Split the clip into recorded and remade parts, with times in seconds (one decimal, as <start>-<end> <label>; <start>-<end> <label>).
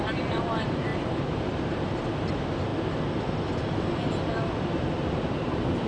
0.0-2.7 remade; 2.7-4.5 recorded; 4.5-5.9 remade